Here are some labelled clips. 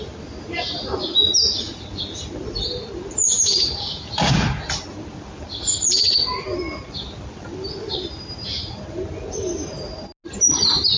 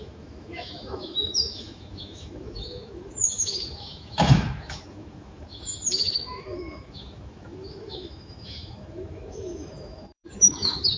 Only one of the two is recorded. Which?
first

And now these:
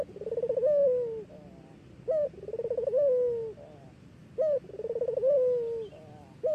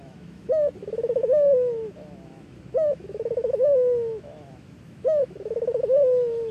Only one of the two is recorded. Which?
first